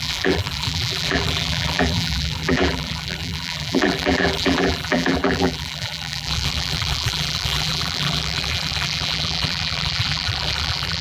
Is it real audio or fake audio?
fake